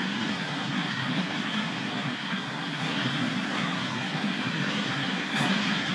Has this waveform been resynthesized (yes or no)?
yes